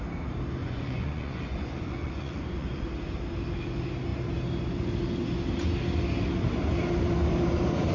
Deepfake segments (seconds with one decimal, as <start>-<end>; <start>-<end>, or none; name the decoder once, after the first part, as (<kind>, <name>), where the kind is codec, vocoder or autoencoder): 0.6-2.9 (vocoder, Vocos)